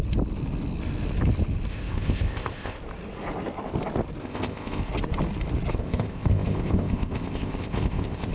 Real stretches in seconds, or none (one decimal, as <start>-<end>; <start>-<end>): 0.0-1.7; 2.8-4.2; 4.9-5.7